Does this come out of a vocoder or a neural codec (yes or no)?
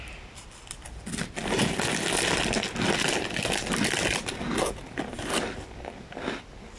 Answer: no